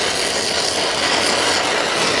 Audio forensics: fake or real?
real